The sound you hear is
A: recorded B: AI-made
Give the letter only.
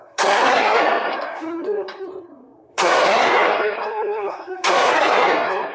B